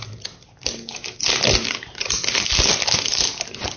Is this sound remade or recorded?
recorded